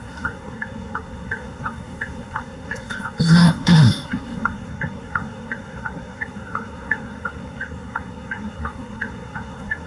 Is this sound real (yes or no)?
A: no